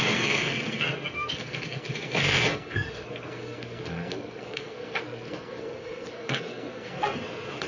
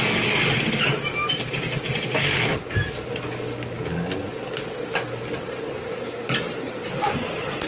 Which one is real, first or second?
second